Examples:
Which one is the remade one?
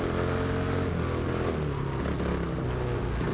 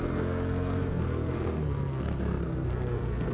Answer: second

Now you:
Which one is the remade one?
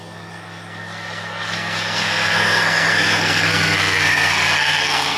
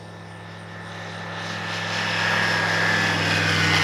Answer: first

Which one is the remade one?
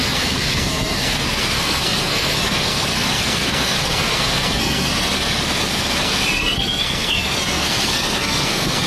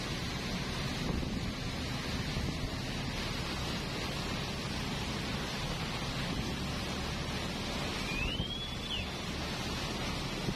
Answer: first